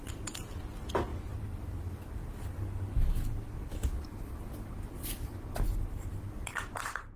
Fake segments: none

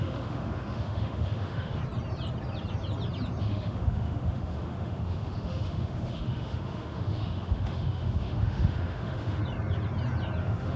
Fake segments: 0.0-1.8 (autoencoder, DAC-VAE); 3.4-9.4; 10.4-10.8

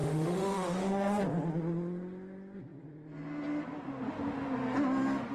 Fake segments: 0.0-1.2 (autoencoder, DAC-VAE)

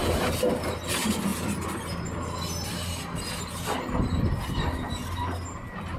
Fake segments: none

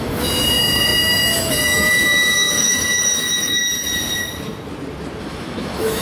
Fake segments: 0.0-3.6 (autoencoder, DAC-VAE); 5.2-6.0